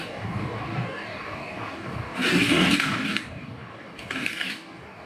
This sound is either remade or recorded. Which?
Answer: remade